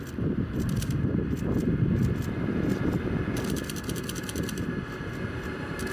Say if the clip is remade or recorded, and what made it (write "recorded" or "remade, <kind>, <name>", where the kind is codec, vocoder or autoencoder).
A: recorded